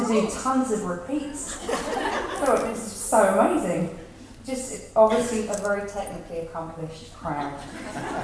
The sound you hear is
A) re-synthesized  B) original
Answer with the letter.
B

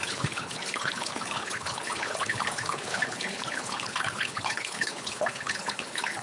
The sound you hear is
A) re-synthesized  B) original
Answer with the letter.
A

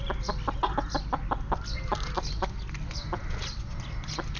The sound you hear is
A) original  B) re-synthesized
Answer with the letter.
A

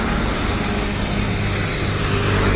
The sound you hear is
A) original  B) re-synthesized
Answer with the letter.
A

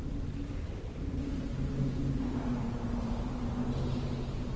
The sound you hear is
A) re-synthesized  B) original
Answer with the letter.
B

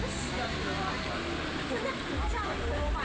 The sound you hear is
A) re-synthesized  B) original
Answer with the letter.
B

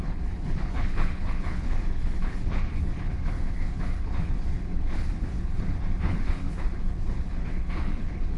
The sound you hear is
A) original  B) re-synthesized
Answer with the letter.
B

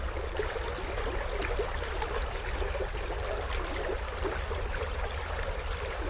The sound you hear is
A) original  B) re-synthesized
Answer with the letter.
A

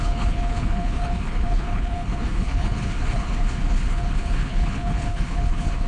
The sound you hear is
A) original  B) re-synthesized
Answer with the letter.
B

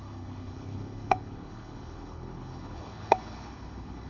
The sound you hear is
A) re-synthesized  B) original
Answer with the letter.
A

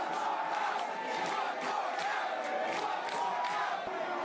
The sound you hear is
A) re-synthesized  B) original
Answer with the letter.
B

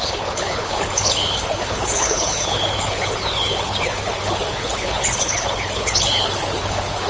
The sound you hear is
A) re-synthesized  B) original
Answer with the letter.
A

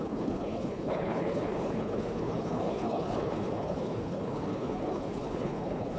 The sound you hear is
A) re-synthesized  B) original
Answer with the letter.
A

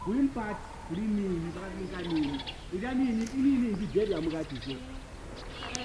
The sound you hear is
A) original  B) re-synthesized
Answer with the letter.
A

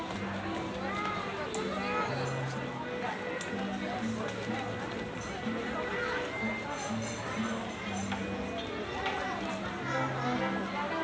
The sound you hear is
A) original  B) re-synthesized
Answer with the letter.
A